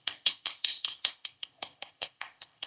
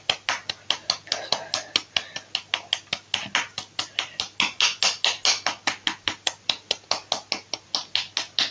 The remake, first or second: first